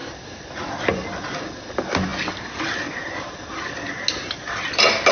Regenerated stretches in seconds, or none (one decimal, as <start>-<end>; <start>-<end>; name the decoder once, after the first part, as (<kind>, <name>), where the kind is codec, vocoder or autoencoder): none